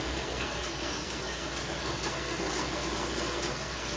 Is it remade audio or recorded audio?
remade